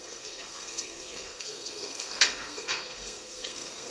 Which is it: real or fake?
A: fake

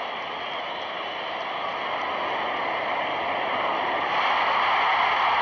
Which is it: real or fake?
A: real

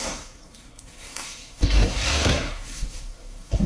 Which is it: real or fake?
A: fake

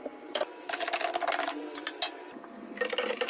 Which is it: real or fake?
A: real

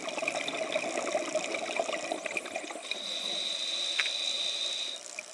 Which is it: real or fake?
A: real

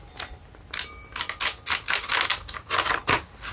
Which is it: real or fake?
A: real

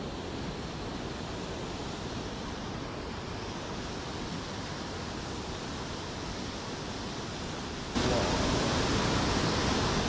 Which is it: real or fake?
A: real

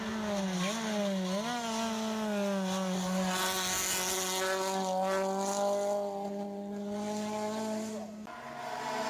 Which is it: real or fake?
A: real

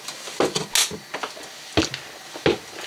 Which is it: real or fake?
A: real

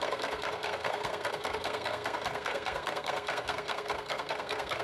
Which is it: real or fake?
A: fake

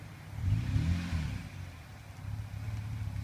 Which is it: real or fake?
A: real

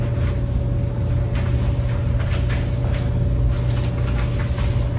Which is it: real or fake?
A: real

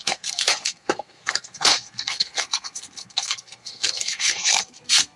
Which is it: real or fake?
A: fake